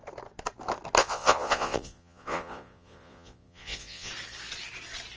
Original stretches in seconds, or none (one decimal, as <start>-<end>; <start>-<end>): 0.0-1.0; 4.1-5.2